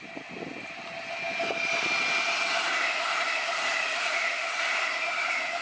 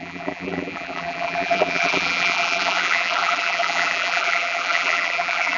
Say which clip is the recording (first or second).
first